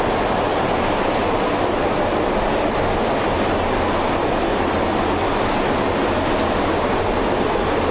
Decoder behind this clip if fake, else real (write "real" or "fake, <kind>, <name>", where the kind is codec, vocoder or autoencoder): real